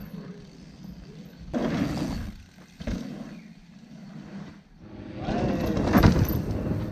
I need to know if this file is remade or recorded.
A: recorded